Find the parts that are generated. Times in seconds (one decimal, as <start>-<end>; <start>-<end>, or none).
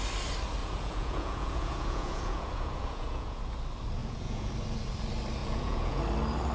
0.6-3.4; 4.0-4.5; 5.4-6.0